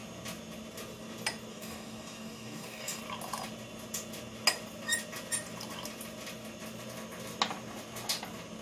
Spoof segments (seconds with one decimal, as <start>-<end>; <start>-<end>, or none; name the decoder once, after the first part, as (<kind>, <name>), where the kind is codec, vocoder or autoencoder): 1.5-3.0 (codec, DAC)